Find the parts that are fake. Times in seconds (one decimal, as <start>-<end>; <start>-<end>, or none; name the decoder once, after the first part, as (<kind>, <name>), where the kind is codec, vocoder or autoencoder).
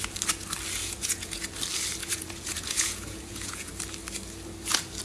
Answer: 0.8-1.5 (vocoder, Vocos); 2.0-3.7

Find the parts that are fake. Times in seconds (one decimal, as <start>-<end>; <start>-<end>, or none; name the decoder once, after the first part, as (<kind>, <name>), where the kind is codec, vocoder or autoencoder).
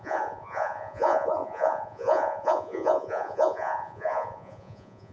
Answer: 0.0-5.1 (vocoder, Vocos)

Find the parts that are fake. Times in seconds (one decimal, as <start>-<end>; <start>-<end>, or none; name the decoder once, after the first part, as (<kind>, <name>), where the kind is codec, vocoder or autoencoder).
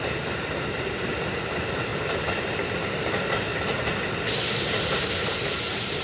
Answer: 1.9-2.5 (vocoder, BigVGAN v2)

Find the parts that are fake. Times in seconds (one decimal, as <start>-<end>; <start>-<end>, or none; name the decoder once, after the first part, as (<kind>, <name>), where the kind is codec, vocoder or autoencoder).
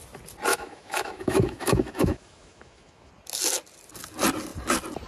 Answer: 0.5-3.1 (autoencoder, DAC-VAE)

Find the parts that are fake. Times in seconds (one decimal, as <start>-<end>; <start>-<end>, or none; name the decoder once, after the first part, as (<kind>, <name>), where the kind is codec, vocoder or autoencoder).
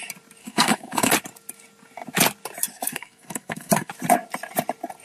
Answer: 0.4-1.1 (codec, SNAC); 2.7-3.9